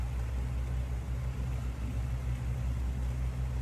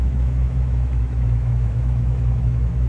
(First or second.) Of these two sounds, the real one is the first